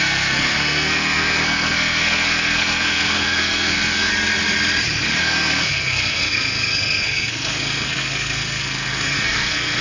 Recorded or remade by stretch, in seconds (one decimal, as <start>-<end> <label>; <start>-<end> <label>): 0.0-4.1 remade; 4.1-5.2 recorded; 5.2-9.8 remade